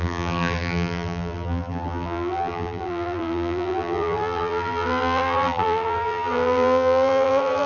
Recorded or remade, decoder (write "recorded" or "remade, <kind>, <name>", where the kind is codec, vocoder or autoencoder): remade, vocoder, BigVGAN v2